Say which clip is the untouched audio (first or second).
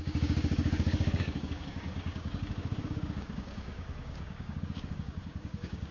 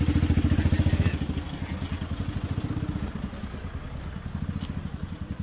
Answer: second